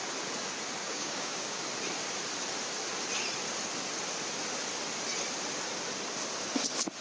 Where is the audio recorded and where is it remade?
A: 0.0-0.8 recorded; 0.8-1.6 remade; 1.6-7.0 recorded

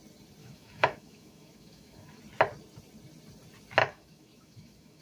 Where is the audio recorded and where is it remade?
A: 0.0-0.4 recorded; 0.4-2.2 remade; 2.2-3.8 recorded; 3.8-5.0 remade

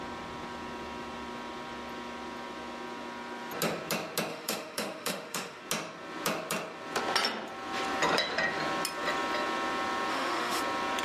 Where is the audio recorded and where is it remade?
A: 0.0-4.3 recorded; 4.3-5.6 remade; 5.6-10.1 recorded; 10.1-10.6 remade; 10.6-11.0 recorded

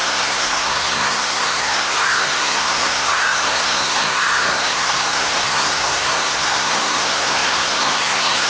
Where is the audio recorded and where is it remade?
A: 0.0-8.5 remade

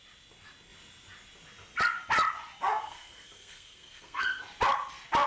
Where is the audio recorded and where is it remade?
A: 0.0-2.8 recorded; 2.8-4.4 remade; 4.4-5.3 recorded

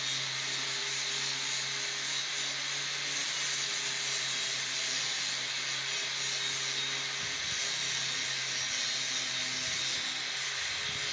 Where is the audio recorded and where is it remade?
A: 0.0-11.1 recorded